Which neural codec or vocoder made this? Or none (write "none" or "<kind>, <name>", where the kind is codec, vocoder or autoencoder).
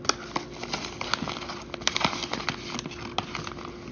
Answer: none